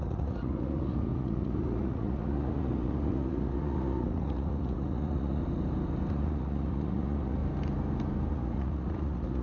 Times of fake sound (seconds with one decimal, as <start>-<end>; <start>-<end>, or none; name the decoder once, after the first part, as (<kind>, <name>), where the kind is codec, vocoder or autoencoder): 0.0-5.4 (vocoder, Vocos); 6.1-7.4; 8.3-9.4